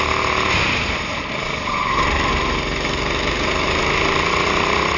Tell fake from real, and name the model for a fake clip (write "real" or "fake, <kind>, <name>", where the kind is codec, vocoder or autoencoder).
real